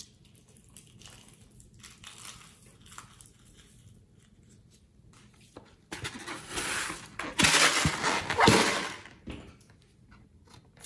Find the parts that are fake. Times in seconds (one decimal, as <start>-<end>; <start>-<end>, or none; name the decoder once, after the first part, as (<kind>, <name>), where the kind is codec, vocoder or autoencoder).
none